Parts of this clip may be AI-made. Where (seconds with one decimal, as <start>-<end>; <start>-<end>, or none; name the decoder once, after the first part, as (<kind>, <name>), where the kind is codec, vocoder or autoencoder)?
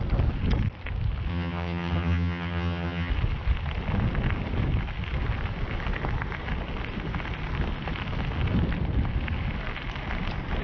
1.3-3.1 (vocoder, HiFi-GAN)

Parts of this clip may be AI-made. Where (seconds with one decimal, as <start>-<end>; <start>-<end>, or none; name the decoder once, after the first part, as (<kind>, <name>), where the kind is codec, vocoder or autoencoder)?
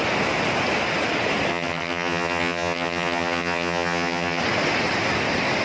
1.5-4.4 (vocoder, HiFi-GAN)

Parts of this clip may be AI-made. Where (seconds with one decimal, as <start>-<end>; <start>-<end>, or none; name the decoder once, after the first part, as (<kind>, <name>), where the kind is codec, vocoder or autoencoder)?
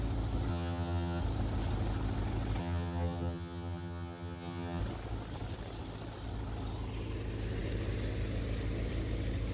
0.5-1.2 (vocoder, HiFi-GAN); 2.6-4.8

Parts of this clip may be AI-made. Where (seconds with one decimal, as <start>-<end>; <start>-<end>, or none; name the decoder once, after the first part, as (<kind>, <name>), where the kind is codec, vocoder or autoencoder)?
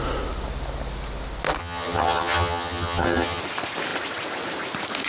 1.6-3.4 (vocoder, HiFi-GAN)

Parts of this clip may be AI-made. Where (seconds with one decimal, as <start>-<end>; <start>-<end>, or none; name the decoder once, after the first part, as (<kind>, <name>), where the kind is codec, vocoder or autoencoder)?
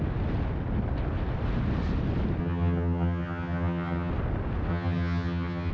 2.4-4.1 (vocoder, HiFi-GAN); 4.7-5.7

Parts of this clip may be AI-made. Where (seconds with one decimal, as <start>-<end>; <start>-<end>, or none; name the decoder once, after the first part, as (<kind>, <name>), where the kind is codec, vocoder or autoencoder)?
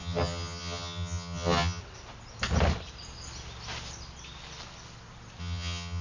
0.0-1.8 (vocoder, HiFi-GAN); 5.4-6.0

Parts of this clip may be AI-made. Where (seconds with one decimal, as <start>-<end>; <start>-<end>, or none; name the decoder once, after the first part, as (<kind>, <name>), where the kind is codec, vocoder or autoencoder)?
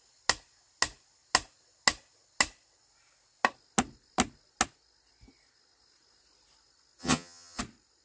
7.0-7.6 (vocoder, HiFi-GAN)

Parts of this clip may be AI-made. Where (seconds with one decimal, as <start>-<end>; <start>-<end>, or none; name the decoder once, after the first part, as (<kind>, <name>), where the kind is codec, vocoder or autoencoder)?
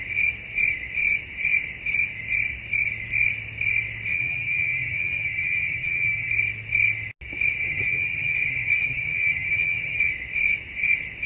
4.1-6.3 (vocoder, HiFi-GAN); 7.6-10.1